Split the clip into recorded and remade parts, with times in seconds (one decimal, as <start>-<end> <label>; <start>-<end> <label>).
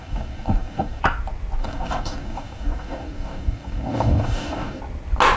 0.0-1.0 remade; 1.0-1.6 recorded; 1.6-4.8 remade; 4.8-5.4 recorded